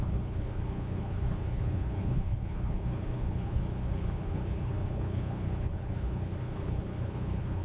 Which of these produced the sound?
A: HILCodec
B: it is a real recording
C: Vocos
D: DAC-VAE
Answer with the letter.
A